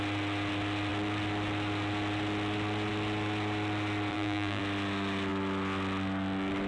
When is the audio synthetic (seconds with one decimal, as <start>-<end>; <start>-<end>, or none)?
4.1-4.6

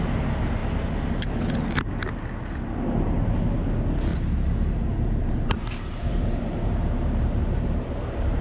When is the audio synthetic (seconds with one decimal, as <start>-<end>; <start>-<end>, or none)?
4.1-8.4

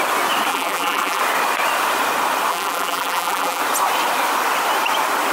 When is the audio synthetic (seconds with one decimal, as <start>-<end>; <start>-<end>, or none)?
0.5-1.2; 2.5-3.6

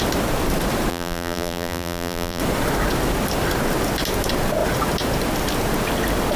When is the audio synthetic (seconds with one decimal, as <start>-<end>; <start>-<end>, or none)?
0.9-2.4

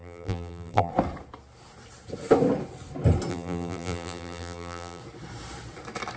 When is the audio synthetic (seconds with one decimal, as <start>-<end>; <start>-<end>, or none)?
0.0-0.9; 3.3-5.0

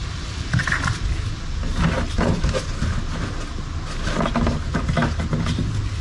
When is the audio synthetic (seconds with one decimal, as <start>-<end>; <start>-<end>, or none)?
0.0-1.8